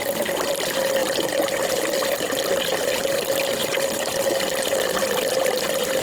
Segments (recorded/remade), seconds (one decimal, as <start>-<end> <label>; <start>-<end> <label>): 0.0-1.0 recorded; 1.0-1.8 remade; 1.8-3.6 recorded; 3.6-5.0 remade; 5.0-6.0 recorded